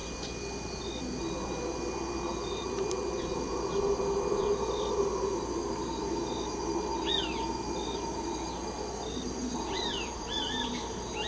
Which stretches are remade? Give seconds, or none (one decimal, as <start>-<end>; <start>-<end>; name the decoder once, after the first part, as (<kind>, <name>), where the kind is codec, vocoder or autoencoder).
2.3-3.2 (vocoder, BigVGAN v2)